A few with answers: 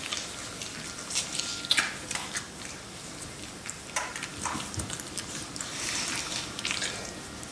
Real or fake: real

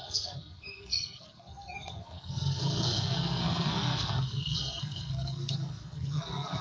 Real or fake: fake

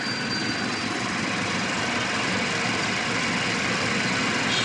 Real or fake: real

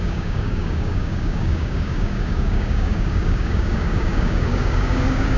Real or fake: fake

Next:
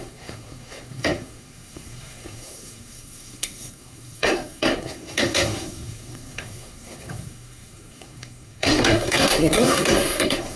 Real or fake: fake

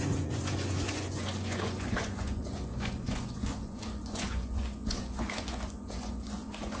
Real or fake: fake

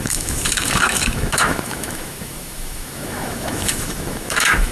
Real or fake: fake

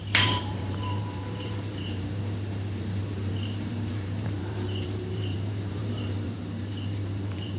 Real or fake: fake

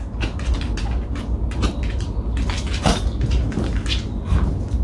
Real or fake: real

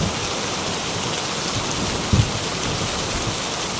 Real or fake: real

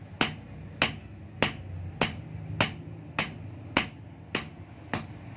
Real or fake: real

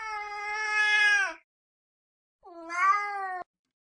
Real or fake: real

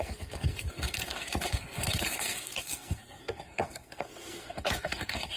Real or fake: fake